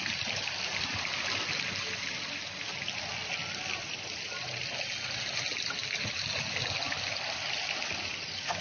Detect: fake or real real